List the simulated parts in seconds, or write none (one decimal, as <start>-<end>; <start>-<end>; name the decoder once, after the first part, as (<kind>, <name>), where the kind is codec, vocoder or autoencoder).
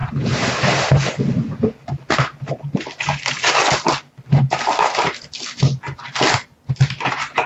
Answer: none